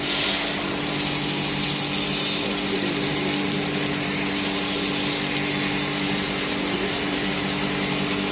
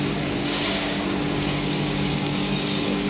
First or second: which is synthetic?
second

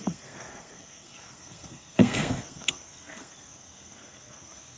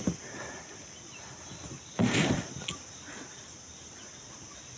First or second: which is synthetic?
first